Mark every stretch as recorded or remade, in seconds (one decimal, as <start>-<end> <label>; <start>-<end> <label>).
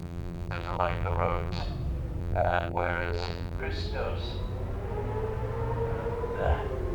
0.0-1.6 remade; 1.6-2.2 recorded; 2.2-3.6 remade; 3.6-6.9 recorded